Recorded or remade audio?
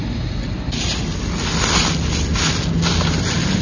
recorded